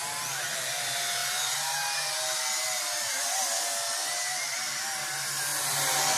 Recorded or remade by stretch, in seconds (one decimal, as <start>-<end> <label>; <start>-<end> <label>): 0.0-6.2 recorded